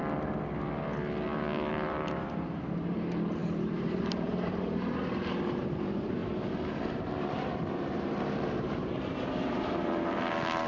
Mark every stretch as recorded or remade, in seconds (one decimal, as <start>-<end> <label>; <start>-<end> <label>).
0.0-1.7 recorded; 1.7-6.2 remade; 6.2-6.8 recorded; 6.8-10.7 remade